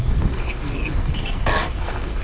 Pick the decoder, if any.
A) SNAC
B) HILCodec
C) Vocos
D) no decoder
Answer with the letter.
A